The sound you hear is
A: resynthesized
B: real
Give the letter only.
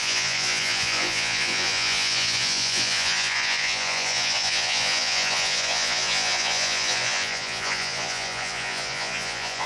A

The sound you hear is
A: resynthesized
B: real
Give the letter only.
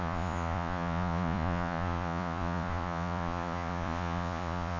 A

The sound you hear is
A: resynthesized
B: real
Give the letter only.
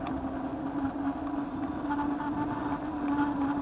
B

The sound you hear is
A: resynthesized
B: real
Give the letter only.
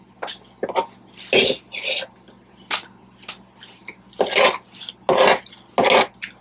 B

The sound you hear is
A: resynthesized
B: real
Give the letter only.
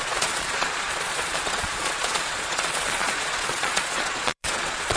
A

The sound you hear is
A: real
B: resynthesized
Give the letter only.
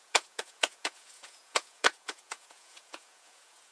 B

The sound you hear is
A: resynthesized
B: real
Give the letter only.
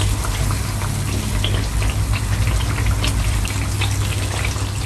B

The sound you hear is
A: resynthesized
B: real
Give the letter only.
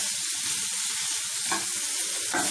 B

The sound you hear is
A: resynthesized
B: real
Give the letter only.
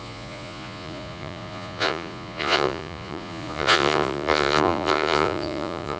A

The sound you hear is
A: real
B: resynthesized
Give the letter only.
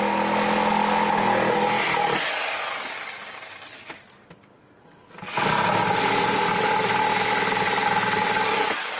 A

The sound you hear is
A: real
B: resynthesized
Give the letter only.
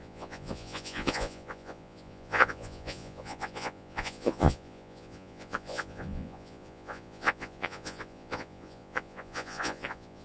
B